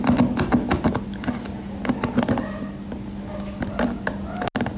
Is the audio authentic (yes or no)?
yes